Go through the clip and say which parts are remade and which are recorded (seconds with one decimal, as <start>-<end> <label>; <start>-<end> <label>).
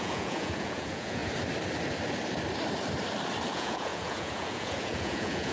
0.0-1.2 remade; 1.2-3.5 recorded; 3.5-5.5 remade